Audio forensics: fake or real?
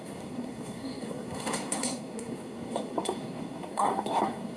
fake